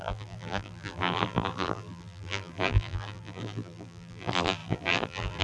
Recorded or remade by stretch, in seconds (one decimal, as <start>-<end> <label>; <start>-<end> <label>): 0.0-5.4 remade